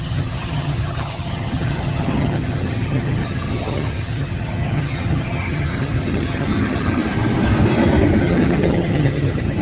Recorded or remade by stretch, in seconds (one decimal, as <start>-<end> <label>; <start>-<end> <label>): 0.0-7.0 remade; 7.0-8.2 recorded; 8.2-9.6 remade